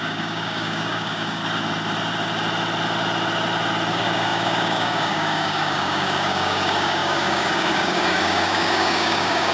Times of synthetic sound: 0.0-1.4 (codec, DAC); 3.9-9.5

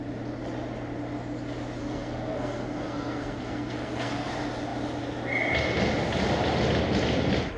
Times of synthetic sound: 1.8-4.3 (codec, SNAC)

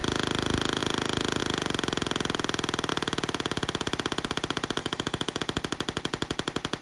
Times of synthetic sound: 4.8-5.4 (autoencoder, DAC-VAE)

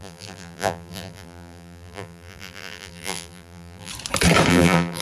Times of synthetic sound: 0.0-3.9 (vocoder, BigVGAN v2); 4.5-5.0

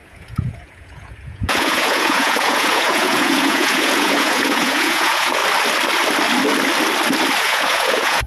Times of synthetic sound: 0.0-5.4 (vocoder, Vocos); 7.4-8.3

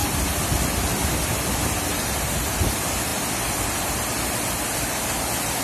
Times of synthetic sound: none

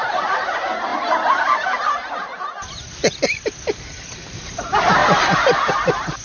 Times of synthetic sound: none